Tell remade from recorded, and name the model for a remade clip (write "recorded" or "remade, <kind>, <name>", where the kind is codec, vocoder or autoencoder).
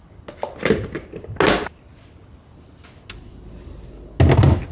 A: recorded